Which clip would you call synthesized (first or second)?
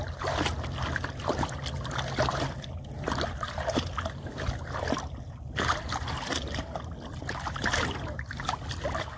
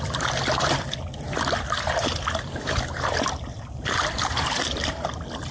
second